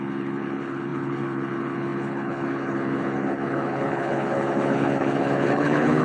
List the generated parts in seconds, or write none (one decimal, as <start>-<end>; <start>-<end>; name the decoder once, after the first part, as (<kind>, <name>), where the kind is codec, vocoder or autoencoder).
0.0-6.0 (codec, HILCodec)